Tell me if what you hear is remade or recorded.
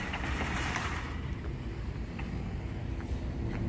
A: recorded